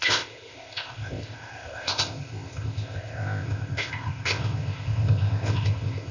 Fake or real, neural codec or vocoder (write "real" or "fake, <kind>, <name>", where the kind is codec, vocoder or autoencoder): fake, codec, ZipCodec